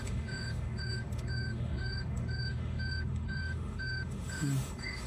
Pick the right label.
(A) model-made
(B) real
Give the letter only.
A